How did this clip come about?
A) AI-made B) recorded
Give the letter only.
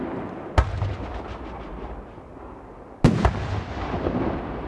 B